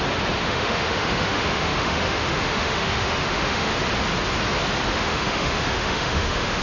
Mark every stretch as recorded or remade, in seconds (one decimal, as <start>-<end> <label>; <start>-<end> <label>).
0.0-0.4 recorded; 0.4-3.7 remade; 3.7-4.9 recorded; 4.9-6.6 remade